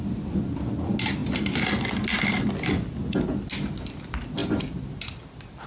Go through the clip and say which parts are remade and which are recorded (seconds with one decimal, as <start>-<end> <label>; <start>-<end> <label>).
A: 0.0-5.7 recorded